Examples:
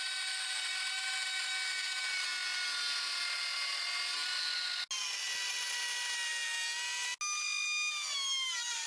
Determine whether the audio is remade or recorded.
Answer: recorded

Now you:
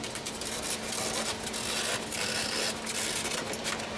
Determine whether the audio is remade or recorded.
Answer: recorded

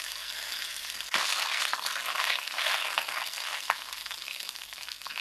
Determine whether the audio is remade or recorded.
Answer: remade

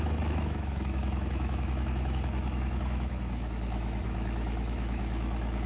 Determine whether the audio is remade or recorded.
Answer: remade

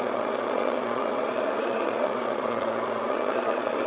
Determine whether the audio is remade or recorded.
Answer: remade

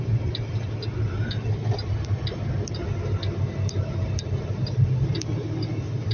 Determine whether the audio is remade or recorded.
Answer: recorded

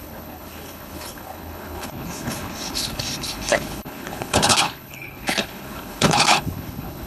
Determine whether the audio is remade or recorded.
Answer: remade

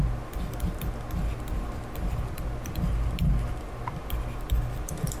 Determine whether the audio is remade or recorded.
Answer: recorded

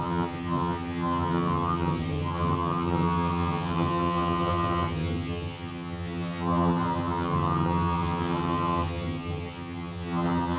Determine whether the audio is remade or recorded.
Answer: remade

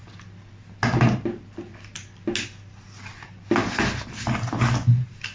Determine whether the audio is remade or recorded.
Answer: recorded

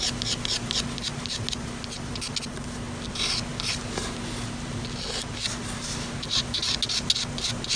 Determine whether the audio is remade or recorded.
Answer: recorded